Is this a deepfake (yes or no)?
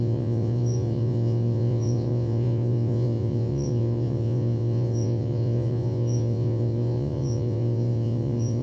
yes